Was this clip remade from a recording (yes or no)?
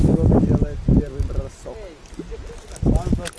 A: no